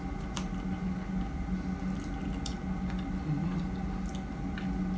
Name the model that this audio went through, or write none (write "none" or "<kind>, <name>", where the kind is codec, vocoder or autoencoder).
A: none